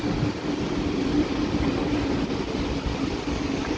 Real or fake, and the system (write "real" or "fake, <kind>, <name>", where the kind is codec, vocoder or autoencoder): real